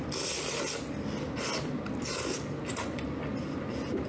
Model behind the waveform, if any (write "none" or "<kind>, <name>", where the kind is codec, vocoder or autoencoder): none